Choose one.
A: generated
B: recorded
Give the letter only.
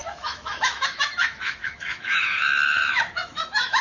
A